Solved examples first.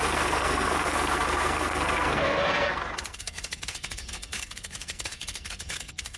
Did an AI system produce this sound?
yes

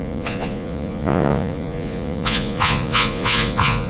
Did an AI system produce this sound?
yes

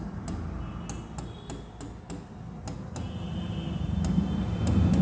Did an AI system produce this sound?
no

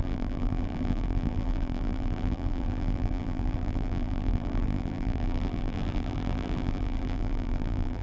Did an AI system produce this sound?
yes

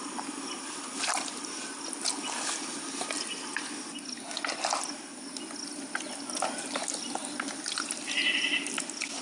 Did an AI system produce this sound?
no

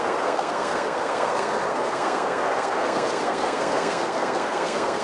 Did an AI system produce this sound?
yes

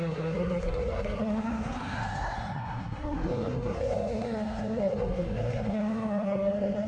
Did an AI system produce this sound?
yes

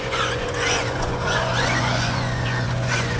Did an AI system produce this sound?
yes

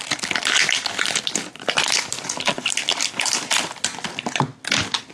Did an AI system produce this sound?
no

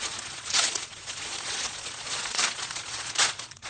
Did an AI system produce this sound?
yes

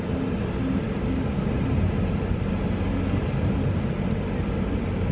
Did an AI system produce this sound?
no